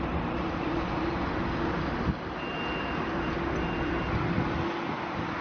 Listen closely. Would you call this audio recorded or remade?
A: recorded